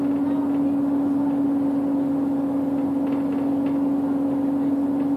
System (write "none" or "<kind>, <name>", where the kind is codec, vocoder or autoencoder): none